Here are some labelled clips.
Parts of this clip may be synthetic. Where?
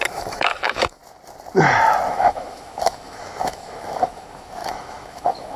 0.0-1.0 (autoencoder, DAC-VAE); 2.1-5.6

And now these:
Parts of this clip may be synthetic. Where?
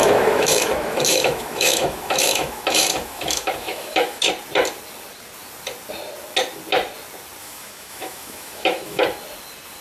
0.0-4.3 (autoencoder, DAC-VAE); 7.4-9.0